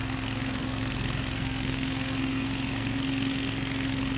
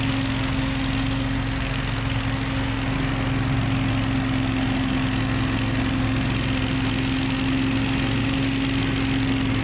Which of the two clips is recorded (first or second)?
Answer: second